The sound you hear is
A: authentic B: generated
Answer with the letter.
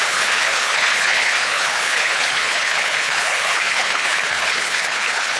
B